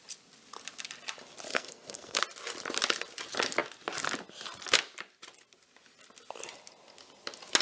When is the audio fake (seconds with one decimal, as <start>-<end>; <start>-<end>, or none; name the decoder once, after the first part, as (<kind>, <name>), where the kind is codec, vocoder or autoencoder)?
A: 1.5-2.2 (codec, SNAC)